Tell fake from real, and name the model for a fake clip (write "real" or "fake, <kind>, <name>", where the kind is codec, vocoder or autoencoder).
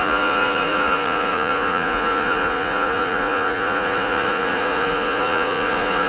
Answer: fake, vocoder, Vocos